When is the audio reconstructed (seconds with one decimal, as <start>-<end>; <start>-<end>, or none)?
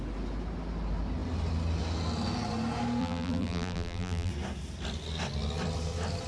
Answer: 3.0-4.3